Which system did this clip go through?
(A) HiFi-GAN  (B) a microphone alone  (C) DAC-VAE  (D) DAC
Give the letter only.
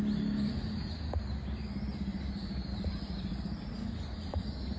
B